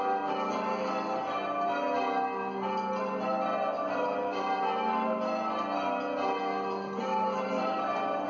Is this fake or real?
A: real